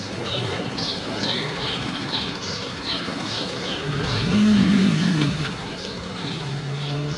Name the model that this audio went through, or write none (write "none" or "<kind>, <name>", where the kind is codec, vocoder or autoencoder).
codec, SNAC